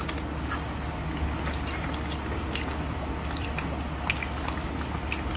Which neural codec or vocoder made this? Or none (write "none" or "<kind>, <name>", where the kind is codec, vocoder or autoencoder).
none